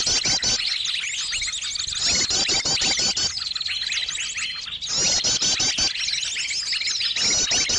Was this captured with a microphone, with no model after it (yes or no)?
yes